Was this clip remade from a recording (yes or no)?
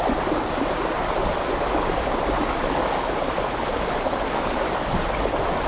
no